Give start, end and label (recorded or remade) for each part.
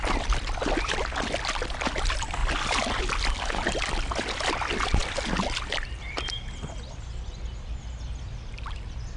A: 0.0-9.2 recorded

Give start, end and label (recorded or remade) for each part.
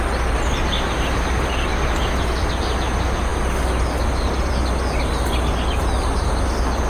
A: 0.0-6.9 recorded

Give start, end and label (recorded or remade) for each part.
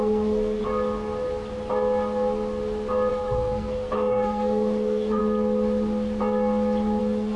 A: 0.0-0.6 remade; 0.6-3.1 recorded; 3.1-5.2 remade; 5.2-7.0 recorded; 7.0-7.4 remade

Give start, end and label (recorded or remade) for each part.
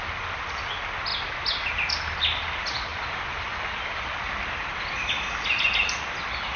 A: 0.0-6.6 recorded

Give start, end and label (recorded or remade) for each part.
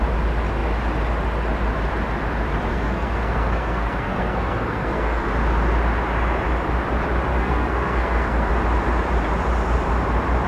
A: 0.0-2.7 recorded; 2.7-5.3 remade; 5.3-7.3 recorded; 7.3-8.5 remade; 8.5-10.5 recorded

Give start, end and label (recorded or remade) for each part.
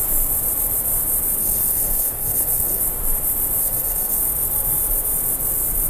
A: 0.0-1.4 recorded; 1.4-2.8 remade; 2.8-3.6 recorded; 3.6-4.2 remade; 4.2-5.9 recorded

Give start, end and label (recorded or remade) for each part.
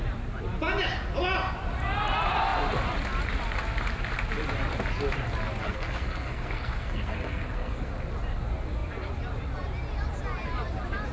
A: 0.0-5.6 recorded; 5.6-7.9 remade; 7.9-11.1 recorded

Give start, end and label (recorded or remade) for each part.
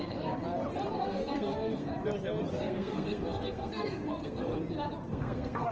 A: 0.0-0.4 remade; 0.4-0.9 recorded; 0.9-1.9 remade; 1.9-2.5 recorded; 2.5-4.5 remade; 4.5-5.1 recorded; 5.1-5.7 remade